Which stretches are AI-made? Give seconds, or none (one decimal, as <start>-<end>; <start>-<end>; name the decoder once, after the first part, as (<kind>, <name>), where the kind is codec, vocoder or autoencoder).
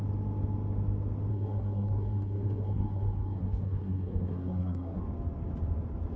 1.3-5.0 (codec, SNAC)